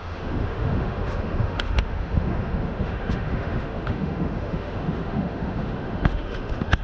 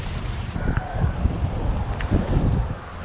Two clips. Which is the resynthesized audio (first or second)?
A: first